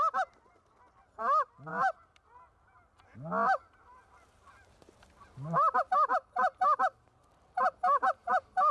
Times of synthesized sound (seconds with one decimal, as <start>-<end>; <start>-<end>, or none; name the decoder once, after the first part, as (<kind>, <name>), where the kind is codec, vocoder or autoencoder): 1.7-2.3 (vocoder, BigVGAN v2)